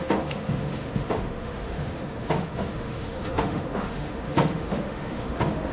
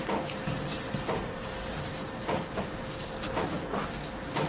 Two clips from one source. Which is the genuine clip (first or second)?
second